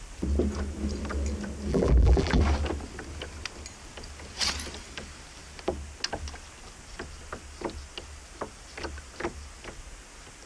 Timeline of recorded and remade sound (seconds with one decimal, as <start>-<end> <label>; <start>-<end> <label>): 0.0-1.7 recorded; 1.7-2.4 remade; 2.4-10.5 recorded